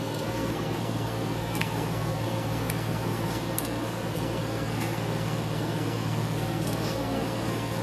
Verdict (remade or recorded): remade